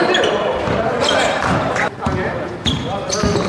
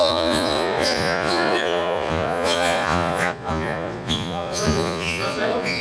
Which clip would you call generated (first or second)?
second